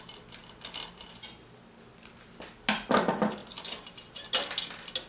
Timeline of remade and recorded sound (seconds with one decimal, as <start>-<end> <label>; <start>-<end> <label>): 0.0-3.4 recorded; 3.4-4.1 remade; 4.1-5.1 recorded